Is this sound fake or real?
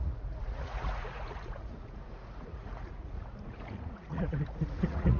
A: fake